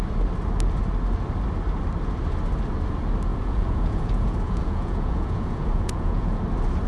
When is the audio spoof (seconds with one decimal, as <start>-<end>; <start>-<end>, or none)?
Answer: 3.3-6.4